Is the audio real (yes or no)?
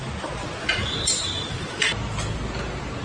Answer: yes